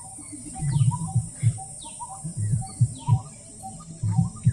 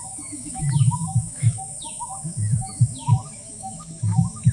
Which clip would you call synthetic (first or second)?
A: second